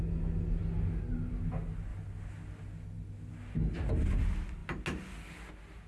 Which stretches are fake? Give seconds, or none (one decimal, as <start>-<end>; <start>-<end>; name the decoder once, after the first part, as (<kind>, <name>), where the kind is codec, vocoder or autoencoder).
none